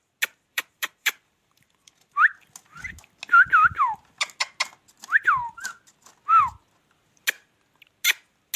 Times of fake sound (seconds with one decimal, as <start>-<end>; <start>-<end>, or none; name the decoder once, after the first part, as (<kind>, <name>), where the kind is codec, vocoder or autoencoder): 0.5-2.3 (vocoder, BigVGAN v2)